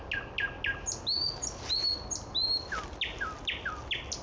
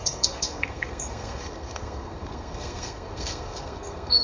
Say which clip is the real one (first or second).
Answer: first